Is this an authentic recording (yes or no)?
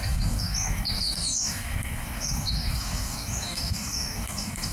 no